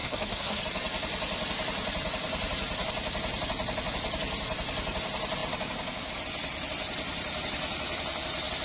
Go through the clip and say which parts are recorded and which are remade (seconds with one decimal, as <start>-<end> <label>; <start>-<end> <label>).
0.0-0.6 remade; 0.6-8.6 recorded

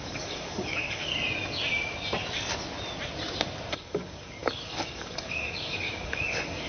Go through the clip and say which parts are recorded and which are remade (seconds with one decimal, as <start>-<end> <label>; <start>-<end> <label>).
0.0-1.1 remade; 1.1-3.7 recorded; 3.7-6.7 remade

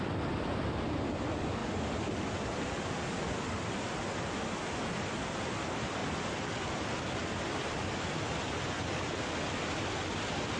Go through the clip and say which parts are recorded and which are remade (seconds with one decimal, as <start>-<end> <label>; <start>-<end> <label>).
0.0-10.6 recorded

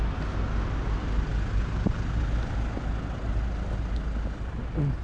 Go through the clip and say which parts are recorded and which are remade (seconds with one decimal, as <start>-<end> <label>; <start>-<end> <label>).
0.0-5.0 recorded

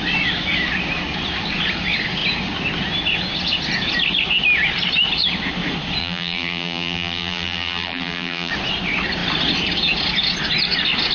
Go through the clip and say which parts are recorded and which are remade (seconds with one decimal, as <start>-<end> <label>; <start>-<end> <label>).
0.0-6.0 recorded; 6.0-8.5 remade; 8.5-11.1 recorded

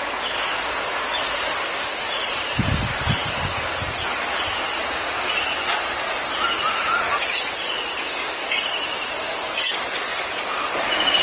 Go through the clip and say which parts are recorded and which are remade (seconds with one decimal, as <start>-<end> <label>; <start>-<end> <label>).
0.0-11.2 recorded

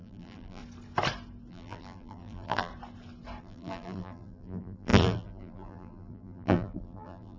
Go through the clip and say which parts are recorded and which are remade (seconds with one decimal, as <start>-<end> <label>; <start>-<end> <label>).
0.0-0.6 remade; 0.6-1.5 recorded; 1.5-2.7 remade; 2.7-3.4 recorded; 3.4-7.4 remade

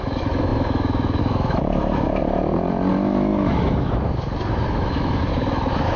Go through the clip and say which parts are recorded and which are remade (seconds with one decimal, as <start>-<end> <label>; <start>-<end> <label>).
0.0-2.2 remade; 2.2-2.9 recorded; 2.9-6.0 remade